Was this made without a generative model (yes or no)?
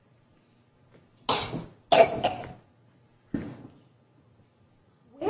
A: yes